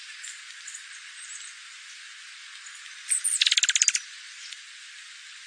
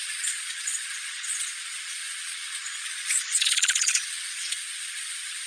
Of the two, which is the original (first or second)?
first